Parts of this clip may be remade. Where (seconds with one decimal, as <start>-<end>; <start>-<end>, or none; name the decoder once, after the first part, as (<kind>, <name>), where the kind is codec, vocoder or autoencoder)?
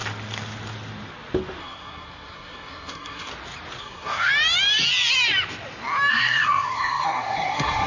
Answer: 1.6-3.3 (codec, SNAC); 3.8-4.3; 6.1-7.9